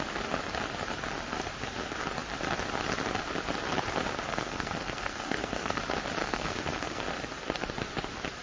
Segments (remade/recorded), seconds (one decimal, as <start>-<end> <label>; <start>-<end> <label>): 0.0-4.3 recorded; 4.3-5.8 remade; 5.8-6.2 recorded; 6.2-7.0 remade; 7.0-8.4 recorded